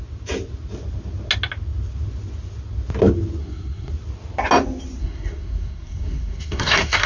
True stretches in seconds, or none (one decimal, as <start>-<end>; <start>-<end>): 0.0-3.4; 3.9-5.0